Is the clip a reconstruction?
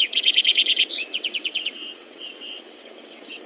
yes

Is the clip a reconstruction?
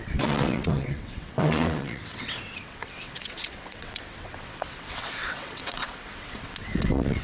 yes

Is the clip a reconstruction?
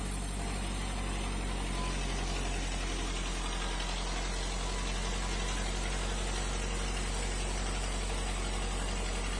no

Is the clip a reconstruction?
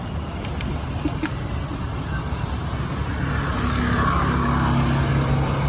no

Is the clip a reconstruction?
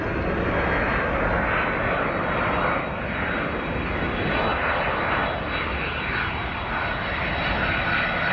no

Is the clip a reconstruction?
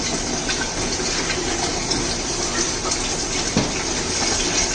no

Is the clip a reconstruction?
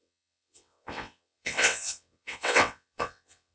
yes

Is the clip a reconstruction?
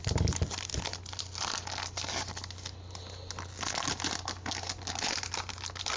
no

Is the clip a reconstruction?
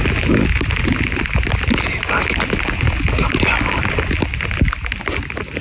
no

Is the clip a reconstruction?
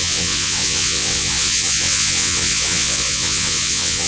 yes